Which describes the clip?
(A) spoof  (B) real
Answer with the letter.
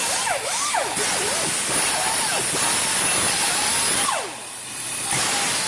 B